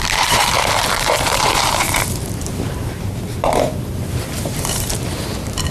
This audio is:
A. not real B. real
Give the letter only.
A